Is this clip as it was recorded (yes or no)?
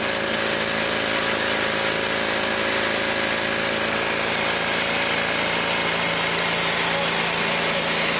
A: yes